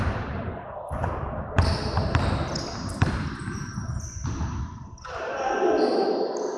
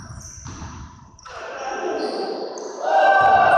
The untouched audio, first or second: first